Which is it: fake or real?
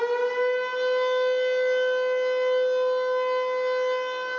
real